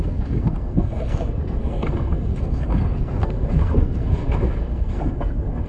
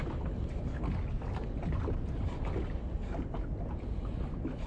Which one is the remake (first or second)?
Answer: first